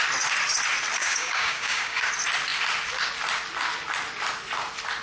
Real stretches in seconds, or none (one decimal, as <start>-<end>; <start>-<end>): 0.0-1.0; 2.1-5.0